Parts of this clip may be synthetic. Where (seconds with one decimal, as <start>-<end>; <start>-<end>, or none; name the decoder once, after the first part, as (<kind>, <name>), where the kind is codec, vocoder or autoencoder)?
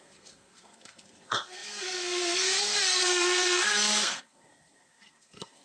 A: 0.0-5.6 (codec, SNAC)